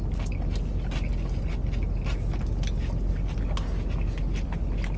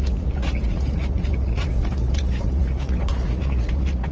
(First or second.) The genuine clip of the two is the first